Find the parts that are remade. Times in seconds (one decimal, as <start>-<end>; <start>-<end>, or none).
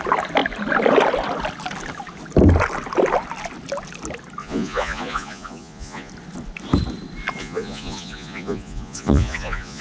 4.4-6.1; 7.4-9.8